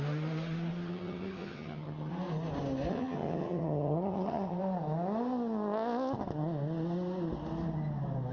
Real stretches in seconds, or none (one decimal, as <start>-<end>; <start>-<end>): 0.0-0.7; 2.1-2.9; 4.6-8.3